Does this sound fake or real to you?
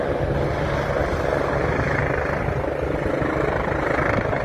real